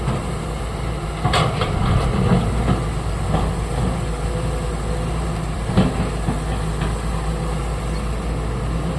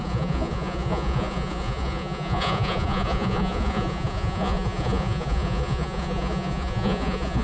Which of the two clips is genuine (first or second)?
first